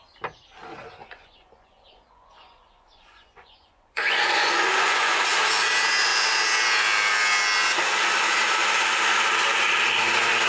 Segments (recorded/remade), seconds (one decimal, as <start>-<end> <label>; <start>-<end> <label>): 0.0-1.0 recorded; 1.0-5.2 remade; 5.2-10.5 recorded